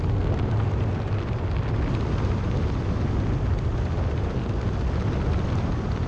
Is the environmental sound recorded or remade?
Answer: recorded